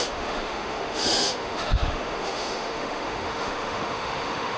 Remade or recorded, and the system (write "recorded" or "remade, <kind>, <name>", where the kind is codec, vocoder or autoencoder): remade, autoencoder, DAC-VAE